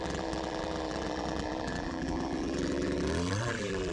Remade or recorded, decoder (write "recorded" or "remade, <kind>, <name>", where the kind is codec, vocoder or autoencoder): remade, vocoder, BigVGAN v2